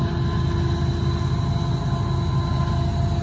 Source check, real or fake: real